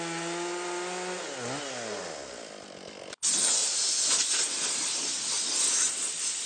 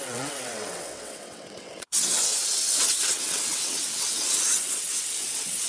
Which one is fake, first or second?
second